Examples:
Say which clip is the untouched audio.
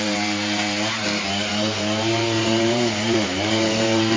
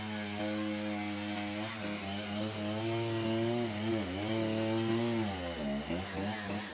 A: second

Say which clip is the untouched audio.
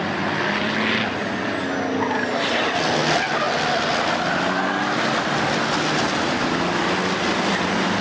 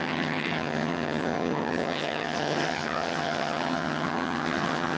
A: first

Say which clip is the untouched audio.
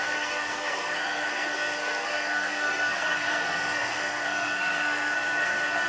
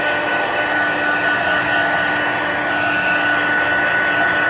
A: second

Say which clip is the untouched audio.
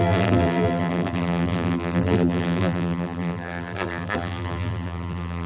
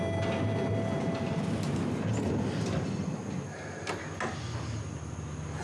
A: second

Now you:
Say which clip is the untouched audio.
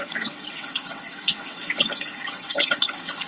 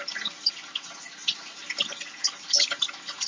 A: second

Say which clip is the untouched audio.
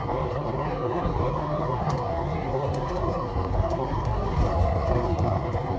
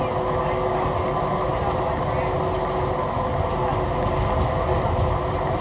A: second